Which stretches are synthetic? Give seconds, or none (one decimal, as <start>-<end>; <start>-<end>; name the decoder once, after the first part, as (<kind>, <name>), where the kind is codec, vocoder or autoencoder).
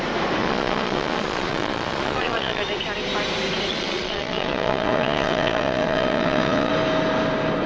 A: 0.4-2.6 (vocoder, Vocos); 3.7-6.7